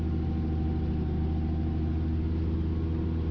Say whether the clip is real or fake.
real